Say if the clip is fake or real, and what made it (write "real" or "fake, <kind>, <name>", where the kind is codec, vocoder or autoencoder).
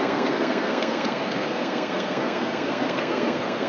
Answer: fake, codec, SNAC